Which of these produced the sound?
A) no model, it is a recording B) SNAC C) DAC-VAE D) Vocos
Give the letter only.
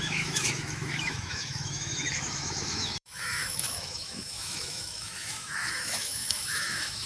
C